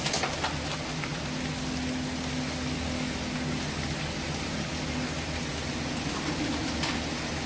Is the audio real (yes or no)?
yes